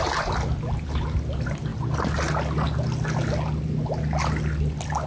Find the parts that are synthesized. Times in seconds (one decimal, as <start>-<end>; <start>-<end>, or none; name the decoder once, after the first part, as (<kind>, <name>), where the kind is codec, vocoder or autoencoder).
none